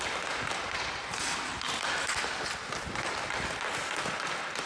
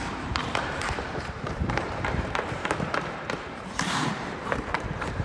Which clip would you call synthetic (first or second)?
second